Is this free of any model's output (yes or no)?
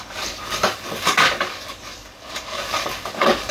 no